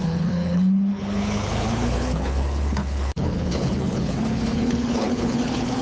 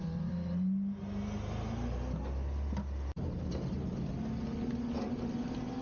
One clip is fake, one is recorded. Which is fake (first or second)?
first